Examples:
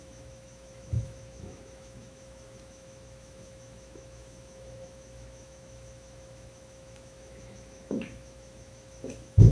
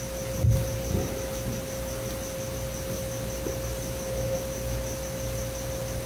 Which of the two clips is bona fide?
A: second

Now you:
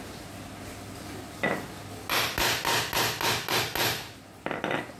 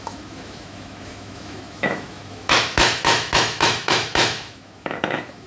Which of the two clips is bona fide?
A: first